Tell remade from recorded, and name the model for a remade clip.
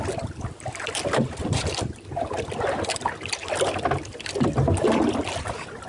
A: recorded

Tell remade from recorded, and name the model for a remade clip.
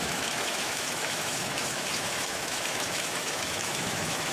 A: remade, autoencoder, DAC-VAE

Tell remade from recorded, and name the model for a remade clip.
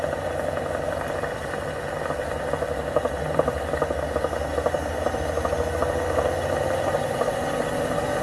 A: recorded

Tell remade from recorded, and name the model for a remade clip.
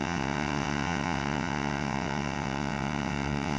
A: remade, vocoder, WaveNeXt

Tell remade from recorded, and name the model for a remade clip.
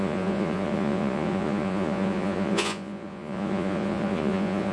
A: remade, vocoder, Vocos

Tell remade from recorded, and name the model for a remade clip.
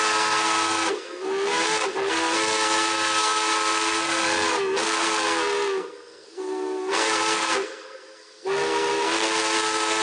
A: remade, codec, SNAC